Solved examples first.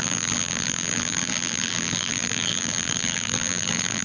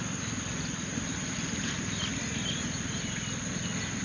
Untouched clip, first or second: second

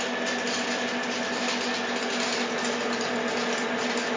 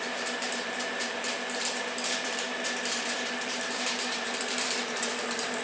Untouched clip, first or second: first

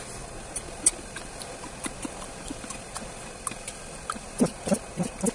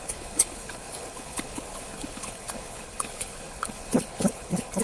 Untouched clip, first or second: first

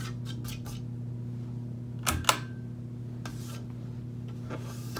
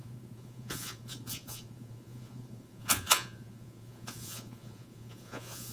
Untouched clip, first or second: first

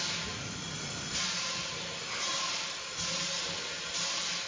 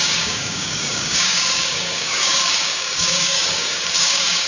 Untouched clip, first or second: first